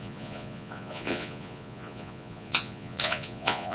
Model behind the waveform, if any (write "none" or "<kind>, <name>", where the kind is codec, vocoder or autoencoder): vocoder, Vocos